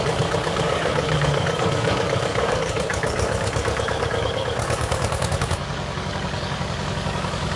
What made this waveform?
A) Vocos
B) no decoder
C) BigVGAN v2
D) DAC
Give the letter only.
D